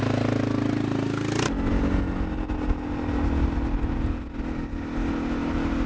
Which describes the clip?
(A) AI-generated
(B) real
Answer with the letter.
B